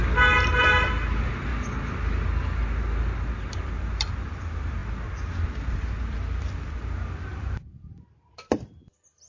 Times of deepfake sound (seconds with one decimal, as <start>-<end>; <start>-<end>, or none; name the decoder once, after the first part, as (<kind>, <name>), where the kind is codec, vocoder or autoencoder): 0.6-1.5 (vocoder, BigVGAN v2); 3.5-4.8; 6.0-9.3